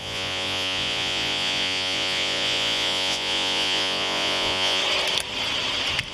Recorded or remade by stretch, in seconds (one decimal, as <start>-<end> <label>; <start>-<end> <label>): 0.0-4.8 remade; 4.8-6.1 recorded